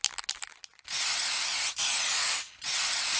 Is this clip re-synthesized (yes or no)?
no